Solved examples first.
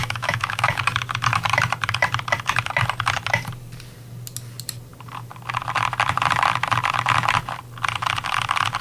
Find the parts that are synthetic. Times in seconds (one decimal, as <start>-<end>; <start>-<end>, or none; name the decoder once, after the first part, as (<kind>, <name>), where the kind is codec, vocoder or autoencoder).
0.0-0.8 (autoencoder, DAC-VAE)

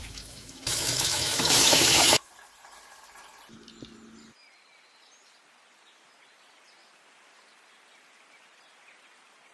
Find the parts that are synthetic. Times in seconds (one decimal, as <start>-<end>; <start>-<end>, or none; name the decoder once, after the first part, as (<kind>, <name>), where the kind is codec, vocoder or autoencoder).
0.0-2.3 (autoencoder, DAC-VAE)

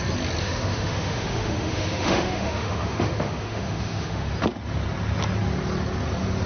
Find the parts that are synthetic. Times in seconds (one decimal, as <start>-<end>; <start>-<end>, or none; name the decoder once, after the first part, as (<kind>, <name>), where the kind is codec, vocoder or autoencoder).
0.4-4.3 (autoencoder, DAC-VAE)

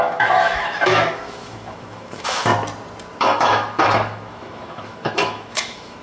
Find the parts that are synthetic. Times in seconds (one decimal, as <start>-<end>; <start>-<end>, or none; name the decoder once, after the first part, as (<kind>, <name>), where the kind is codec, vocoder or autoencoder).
0.0-2.5 (autoencoder, DAC-VAE); 3.2-6.0